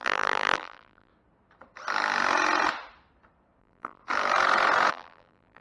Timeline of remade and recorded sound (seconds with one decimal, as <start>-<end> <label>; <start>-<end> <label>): 0.0-1.1 remade; 1.1-3.6 recorded; 3.6-4.0 remade; 4.0-4.9 recorded; 4.9-5.6 remade